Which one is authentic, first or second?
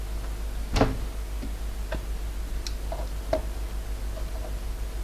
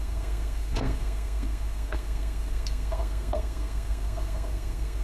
first